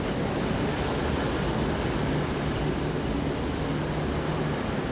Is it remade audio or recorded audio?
recorded